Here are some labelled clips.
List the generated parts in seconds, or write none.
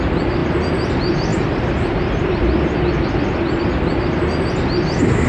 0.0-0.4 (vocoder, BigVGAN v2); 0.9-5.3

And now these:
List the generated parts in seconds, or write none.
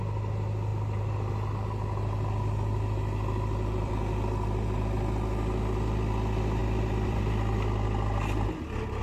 0.7-3.9 (vocoder, BigVGAN v2); 6.6-7.2